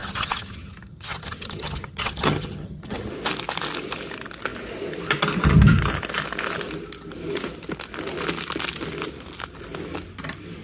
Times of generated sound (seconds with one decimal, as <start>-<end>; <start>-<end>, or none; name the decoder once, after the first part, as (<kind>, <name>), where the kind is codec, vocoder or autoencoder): 0.0-3.1 (vocoder, HiFi-GAN)